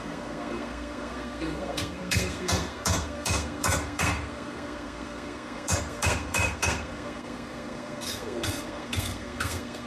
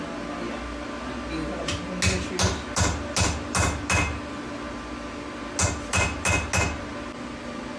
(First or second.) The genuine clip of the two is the second